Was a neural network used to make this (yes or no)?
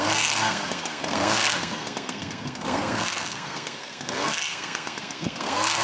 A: yes